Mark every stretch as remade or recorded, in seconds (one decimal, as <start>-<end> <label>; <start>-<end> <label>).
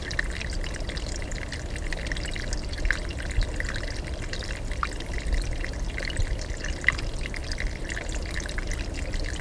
0.0-3.1 recorded; 3.1-8.2 remade; 8.2-9.4 recorded